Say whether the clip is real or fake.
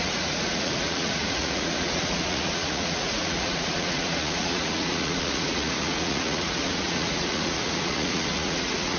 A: fake